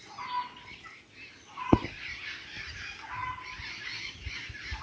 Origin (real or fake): real